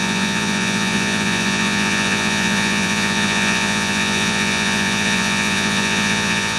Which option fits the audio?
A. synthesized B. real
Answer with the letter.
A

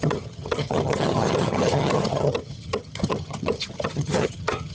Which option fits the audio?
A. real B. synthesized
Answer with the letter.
B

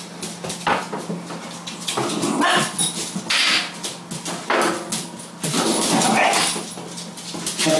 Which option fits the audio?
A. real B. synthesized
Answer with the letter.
A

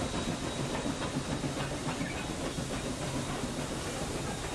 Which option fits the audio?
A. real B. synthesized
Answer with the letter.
A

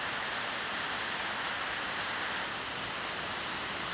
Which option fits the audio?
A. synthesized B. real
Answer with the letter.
B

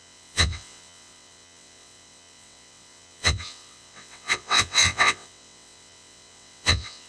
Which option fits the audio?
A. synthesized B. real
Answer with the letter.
A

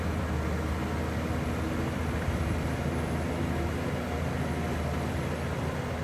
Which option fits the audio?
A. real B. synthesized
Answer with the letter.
A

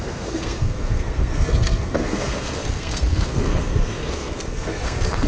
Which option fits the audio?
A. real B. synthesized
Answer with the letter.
B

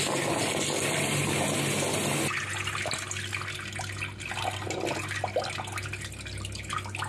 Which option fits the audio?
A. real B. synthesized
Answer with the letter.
A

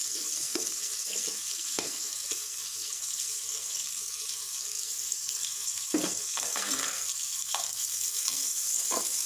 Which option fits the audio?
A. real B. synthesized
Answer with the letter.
B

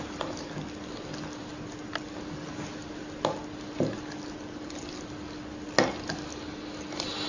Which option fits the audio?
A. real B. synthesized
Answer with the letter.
A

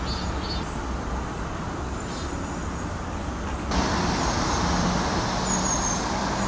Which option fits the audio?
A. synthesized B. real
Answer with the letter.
B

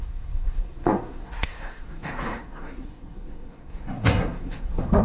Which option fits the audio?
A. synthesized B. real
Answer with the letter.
A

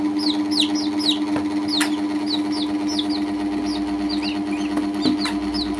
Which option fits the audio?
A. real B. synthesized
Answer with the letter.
A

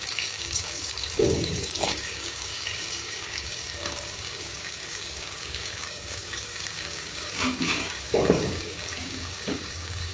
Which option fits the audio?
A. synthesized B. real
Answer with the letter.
A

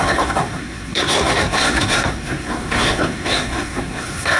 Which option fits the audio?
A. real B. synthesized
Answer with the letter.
B